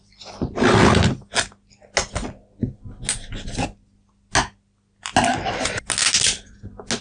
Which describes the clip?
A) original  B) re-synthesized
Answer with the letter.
A